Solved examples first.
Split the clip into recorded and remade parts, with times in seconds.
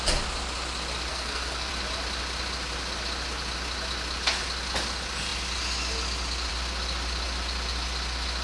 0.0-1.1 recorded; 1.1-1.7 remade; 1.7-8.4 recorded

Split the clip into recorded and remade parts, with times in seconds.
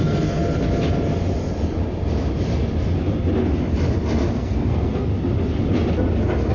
0.0-0.4 remade; 0.4-4.3 recorded; 4.3-5.1 remade; 5.1-6.5 recorded